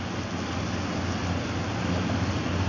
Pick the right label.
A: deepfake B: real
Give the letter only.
B